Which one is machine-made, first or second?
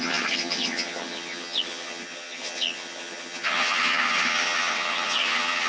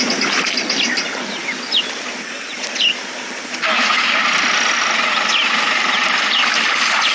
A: first